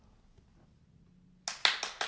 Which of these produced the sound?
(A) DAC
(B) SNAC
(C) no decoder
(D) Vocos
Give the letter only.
C